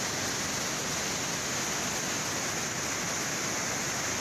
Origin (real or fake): real